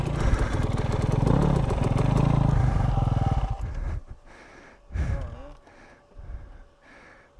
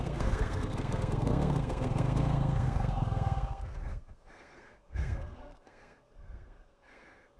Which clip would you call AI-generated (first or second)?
second